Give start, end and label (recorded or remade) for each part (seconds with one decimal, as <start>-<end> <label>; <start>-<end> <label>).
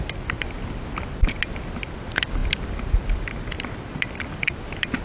0.0-5.0 recorded